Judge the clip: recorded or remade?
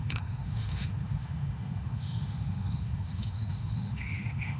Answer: remade